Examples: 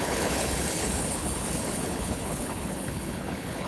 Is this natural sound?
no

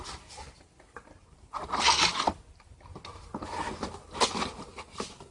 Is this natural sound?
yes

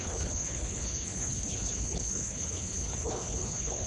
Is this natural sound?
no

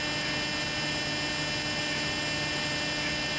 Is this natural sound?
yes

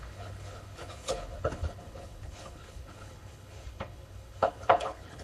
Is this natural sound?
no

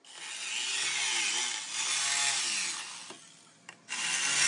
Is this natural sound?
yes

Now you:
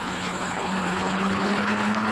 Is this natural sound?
no